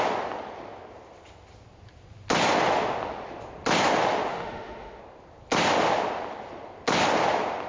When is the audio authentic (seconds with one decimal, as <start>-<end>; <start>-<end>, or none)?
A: 0.0-4.3; 5.0-7.7